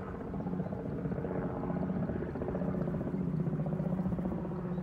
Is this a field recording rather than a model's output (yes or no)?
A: no